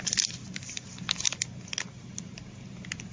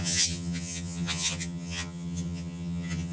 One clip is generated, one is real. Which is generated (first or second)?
second